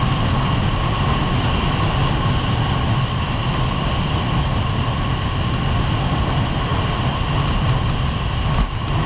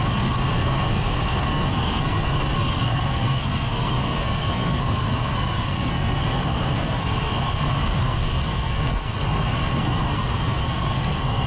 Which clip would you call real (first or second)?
first